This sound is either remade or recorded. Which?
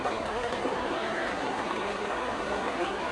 remade